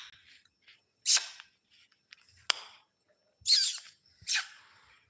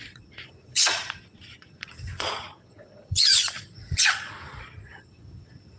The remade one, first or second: second